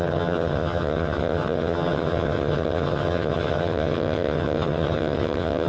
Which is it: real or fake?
fake